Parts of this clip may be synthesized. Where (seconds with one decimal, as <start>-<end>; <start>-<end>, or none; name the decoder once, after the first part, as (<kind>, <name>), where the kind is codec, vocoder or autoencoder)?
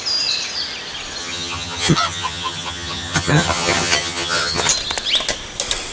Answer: 1.2-4.7 (vocoder, HiFi-GAN)